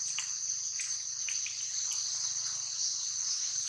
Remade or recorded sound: recorded